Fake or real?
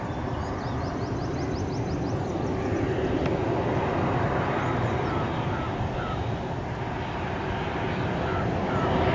real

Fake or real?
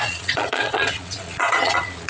fake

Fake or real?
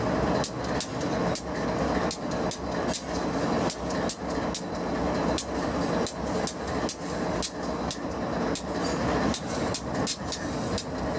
real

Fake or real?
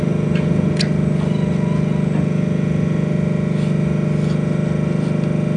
real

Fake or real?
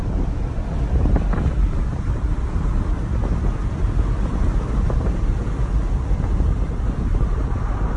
fake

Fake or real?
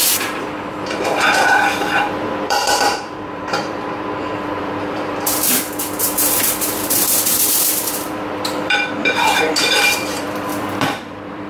fake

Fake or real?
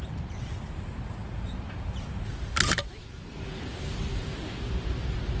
fake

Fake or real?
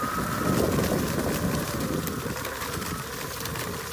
real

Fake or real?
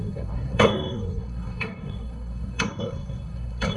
fake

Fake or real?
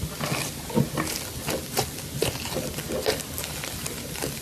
real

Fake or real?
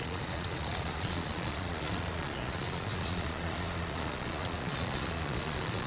fake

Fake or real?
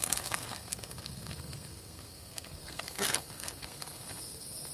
fake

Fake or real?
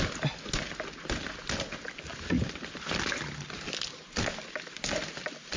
real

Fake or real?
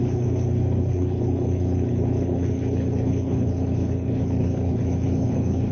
fake